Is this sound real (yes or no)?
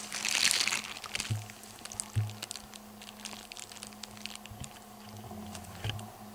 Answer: yes